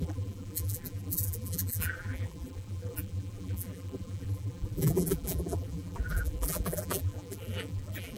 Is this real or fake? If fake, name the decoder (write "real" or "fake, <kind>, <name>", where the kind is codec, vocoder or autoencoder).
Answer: fake, vocoder, BigVGAN v2